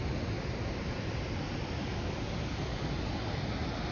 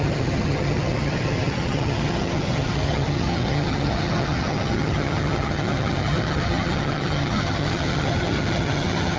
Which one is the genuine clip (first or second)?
first